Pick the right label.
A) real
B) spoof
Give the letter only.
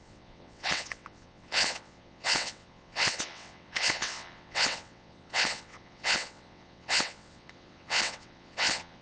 B